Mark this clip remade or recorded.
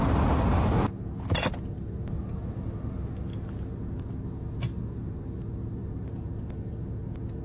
recorded